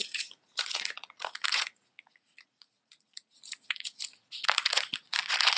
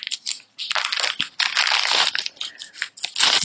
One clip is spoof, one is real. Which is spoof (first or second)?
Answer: first